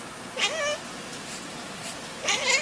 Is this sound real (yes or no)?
yes